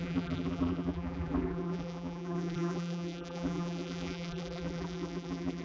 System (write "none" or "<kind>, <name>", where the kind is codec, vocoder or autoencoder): vocoder, BigVGAN v2